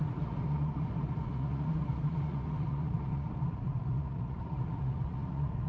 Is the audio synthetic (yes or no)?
yes